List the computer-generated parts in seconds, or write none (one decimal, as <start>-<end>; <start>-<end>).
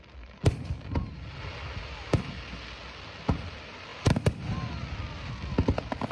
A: none